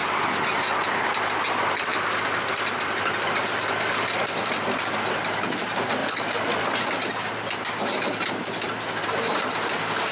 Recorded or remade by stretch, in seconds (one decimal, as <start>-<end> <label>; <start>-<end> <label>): 0.0-1.9 recorded; 1.9-4.9 remade; 4.9-6.0 recorded; 6.0-6.7 remade; 6.7-10.1 recorded